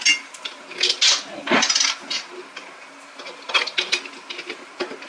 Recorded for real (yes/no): yes